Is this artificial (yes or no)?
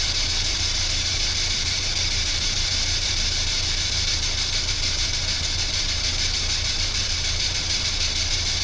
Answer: yes